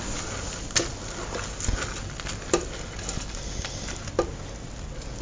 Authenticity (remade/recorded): recorded